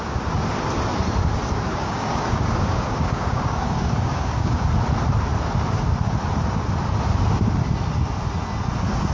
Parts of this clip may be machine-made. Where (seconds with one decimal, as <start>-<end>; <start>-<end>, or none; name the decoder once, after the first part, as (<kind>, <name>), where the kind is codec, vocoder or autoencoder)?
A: 1.7-4.6 (codec, DAC)